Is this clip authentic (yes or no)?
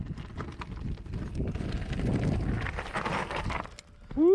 yes